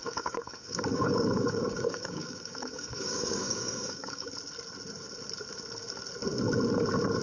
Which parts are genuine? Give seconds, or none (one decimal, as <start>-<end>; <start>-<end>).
4.3-7.2